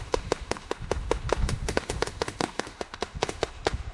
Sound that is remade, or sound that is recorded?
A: remade